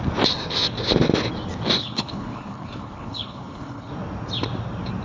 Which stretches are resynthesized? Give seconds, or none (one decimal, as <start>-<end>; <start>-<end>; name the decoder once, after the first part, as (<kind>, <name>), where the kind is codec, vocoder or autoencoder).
1.8-3.9 (codec, HILCodec)